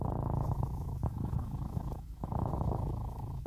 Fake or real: fake